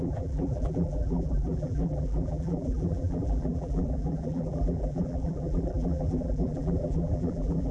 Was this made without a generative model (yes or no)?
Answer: no